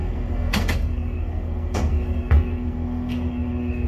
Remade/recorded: remade